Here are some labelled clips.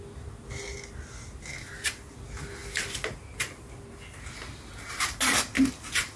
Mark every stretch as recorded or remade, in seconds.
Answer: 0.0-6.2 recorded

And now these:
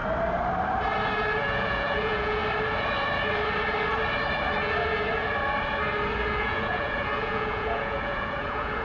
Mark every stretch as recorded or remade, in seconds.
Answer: 0.0-1.4 recorded; 1.4-2.4 remade; 2.4-6.3 recorded; 6.3-8.8 remade